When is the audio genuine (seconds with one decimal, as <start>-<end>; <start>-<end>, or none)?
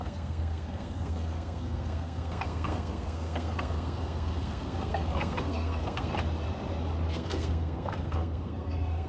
6.1-7.1